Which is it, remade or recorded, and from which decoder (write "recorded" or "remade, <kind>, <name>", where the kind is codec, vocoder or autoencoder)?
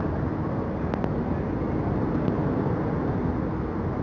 recorded